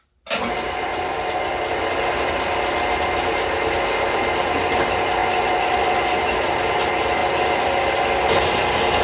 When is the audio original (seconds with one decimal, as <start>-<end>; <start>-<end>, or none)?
0.0-9.0